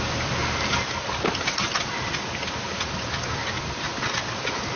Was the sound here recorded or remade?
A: recorded